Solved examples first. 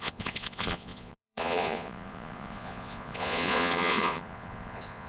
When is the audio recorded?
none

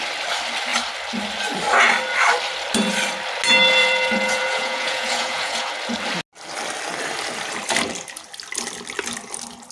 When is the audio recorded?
0.0-3.8; 5.7-9.7

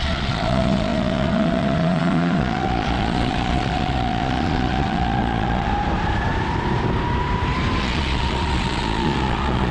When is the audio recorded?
5.7-7.8

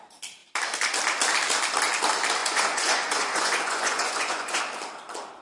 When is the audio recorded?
0.0-2.4; 4.6-5.4